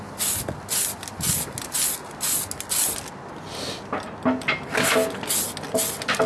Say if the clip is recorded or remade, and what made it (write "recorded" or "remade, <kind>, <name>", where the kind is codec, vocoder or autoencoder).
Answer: recorded